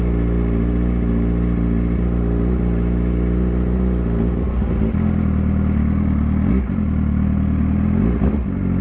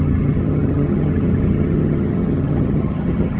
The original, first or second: first